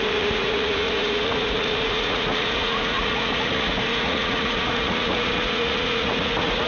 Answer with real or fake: fake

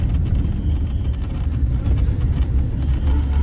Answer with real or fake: real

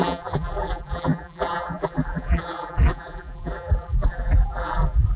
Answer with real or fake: fake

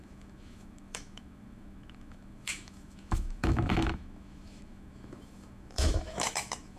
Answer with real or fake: fake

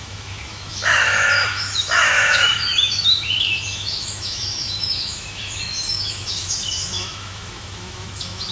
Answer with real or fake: fake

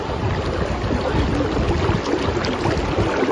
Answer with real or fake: real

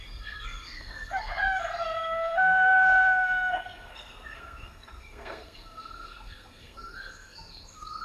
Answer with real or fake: fake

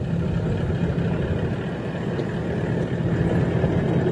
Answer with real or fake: real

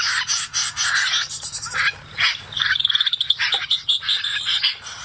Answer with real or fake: real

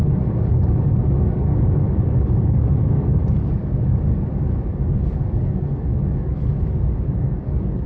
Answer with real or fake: fake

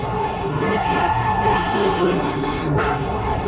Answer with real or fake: fake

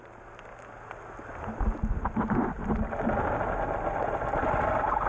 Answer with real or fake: real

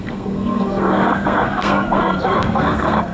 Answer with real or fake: fake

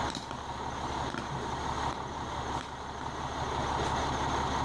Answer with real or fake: real